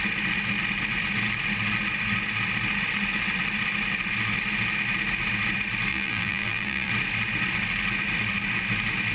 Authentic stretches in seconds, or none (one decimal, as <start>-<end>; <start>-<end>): 0.0-5.9; 6.9-9.1